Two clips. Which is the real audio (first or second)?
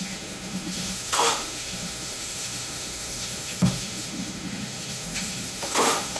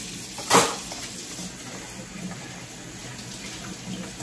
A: second